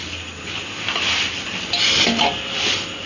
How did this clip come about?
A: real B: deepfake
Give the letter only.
A